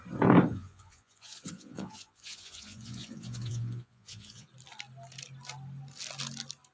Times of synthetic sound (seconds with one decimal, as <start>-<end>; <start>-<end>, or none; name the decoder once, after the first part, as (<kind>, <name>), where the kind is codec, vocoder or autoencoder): 0.5-4.5 (vocoder, Vocos)